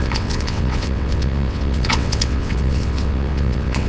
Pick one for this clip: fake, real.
fake